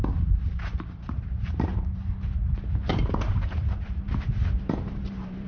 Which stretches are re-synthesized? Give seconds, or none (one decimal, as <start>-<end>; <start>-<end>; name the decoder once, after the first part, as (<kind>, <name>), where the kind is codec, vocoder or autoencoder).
0.0-1.7 (vocoder, BigVGAN v2); 2.9-5.5

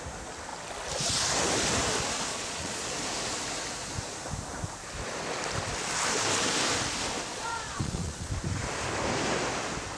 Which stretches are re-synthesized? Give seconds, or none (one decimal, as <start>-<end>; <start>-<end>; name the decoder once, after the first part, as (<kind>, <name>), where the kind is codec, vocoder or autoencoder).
2.3-2.8 (vocoder, Vocos); 7.3-8.3